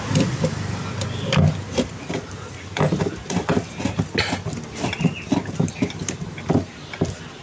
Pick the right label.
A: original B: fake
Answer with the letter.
A